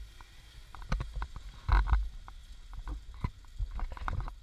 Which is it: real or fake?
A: real